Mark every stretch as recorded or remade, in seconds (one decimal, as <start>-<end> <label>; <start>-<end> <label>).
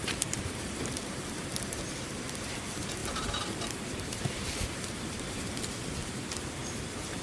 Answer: 0.0-1.4 remade; 1.4-3.0 recorded; 3.0-6.4 remade; 6.4-7.2 recorded